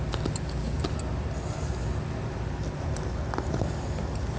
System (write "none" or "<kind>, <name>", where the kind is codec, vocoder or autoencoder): none